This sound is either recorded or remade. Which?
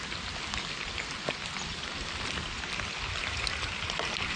recorded